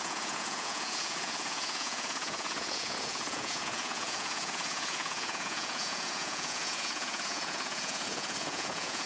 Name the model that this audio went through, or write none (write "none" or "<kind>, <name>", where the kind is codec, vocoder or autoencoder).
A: vocoder, Vocos